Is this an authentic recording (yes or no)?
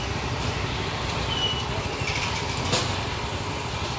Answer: yes